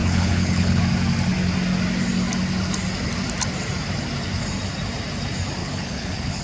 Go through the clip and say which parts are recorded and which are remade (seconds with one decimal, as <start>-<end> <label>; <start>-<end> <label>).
0.0-0.8 remade; 0.8-5.6 recorded; 5.6-6.4 remade